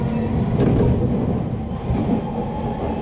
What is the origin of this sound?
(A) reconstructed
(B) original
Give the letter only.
B